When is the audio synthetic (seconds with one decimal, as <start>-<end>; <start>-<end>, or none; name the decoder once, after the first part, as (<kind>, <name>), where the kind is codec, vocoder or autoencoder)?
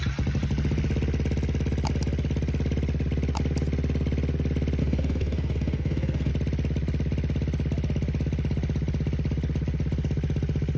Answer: 4.8-6.3 (codec, SNAC)